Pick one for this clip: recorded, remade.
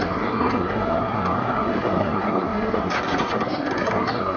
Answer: remade